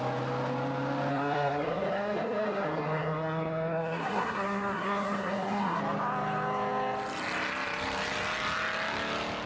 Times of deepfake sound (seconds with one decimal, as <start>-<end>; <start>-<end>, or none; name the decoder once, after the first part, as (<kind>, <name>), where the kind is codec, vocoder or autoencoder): 1.1-5.8 (codec, SNAC)